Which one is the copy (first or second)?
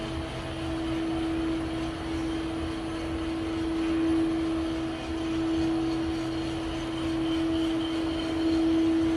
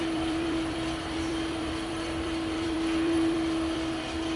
second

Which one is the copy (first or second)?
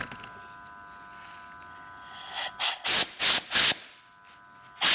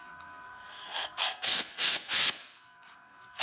second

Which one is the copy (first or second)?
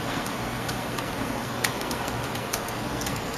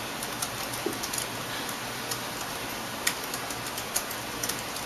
first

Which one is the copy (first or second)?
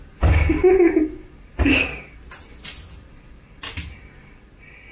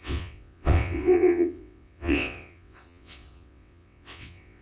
second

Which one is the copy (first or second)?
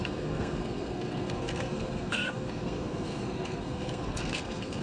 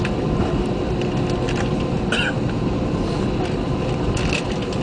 first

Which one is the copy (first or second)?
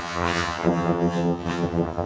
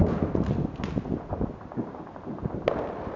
first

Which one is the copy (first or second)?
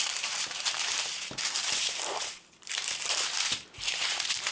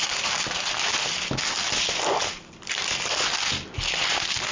first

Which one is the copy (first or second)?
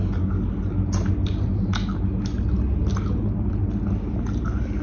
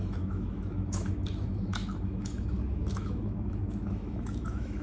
second